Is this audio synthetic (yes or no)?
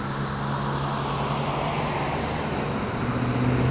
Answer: no